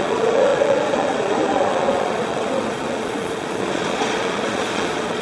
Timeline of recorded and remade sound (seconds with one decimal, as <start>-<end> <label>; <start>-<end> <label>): 0.0-5.2 remade